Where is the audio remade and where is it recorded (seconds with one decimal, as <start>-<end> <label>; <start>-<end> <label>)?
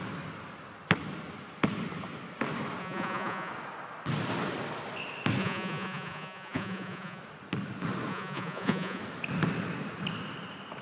0.0-2.8 recorded; 2.8-3.5 remade; 3.5-5.4 recorded; 5.4-7.2 remade; 7.2-8.1 recorded; 8.1-9.0 remade; 9.0-10.8 recorded